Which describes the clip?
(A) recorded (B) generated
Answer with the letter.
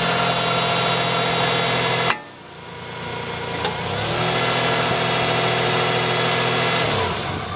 A